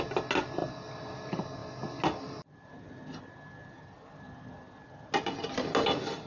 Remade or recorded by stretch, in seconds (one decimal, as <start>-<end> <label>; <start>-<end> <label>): 0.0-6.3 recorded